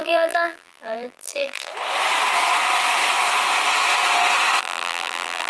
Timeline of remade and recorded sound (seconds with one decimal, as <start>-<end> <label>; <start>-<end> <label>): 0.0-1.7 remade; 1.7-4.6 recorded; 4.6-5.5 remade